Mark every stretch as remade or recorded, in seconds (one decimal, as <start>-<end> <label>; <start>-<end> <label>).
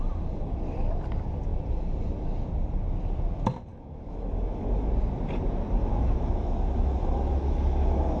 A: 0.0-3.7 recorded; 3.7-4.9 remade; 4.9-5.8 recorded; 5.8-8.2 remade